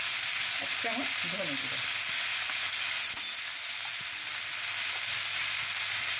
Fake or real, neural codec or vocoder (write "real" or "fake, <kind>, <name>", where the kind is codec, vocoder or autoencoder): real